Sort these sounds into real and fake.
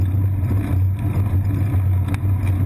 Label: real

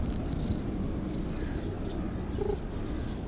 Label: real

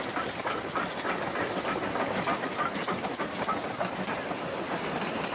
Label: real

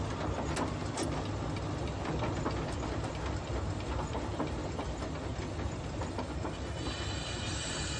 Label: real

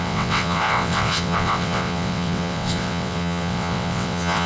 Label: fake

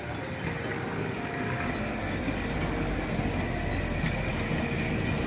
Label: real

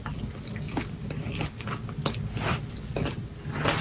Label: real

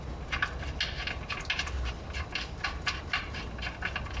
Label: real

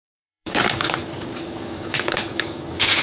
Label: fake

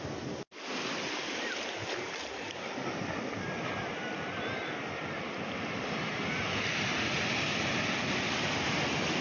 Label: real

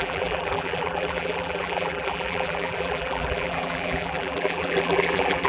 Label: fake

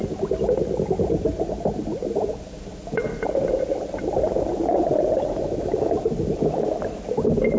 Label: real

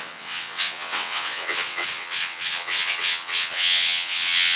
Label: fake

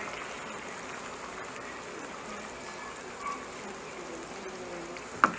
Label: real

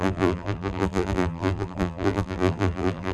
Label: fake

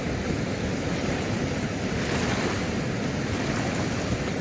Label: real